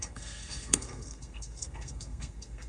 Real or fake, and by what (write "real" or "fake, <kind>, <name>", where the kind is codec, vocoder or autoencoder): fake, codec, SNAC